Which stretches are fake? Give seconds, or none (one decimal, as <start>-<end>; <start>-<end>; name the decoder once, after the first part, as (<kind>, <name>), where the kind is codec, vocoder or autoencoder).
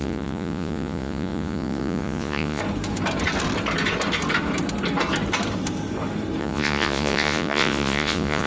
0.0-2.6 (vocoder, Vocos); 6.4-8.5